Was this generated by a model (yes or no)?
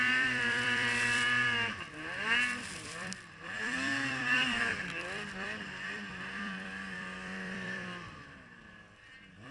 yes